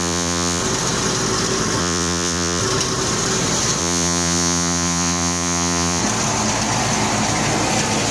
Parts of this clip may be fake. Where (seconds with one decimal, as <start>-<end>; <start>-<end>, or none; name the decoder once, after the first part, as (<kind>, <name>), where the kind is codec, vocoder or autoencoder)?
0.0-0.6 (vocoder, Vocos); 1.8-2.6; 3.8-6.0